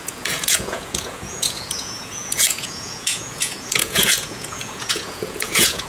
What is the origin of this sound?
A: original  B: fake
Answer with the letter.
B